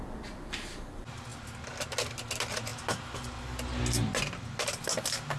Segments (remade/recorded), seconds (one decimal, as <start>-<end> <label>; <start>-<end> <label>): 0.0-5.4 recorded